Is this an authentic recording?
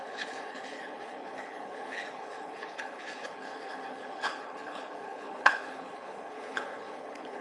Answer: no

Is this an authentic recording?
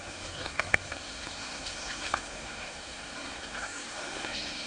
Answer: no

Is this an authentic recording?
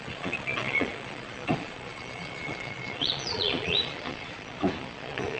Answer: no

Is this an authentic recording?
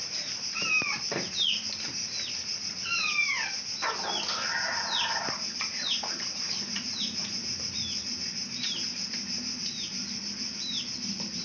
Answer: yes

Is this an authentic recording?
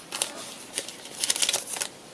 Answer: yes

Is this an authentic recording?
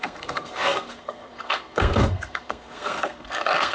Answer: no